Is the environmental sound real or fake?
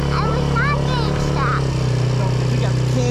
real